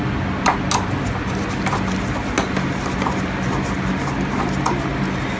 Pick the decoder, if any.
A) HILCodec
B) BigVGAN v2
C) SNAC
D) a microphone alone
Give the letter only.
D